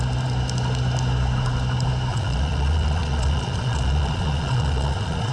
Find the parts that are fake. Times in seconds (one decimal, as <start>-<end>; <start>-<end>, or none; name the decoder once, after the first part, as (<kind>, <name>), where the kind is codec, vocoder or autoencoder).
2.1-5.3 (vocoder, Vocos)